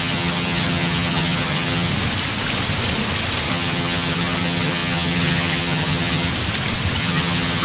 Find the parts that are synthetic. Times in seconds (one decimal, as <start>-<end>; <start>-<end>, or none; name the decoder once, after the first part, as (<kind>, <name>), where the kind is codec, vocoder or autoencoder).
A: 0.0-1.9 (vocoder, HiFi-GAN); 3.5-6.3; 7.0-7.6